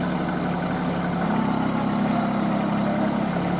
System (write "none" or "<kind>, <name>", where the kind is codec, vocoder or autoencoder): none